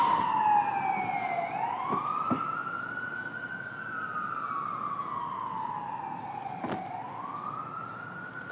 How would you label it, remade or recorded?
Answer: recorded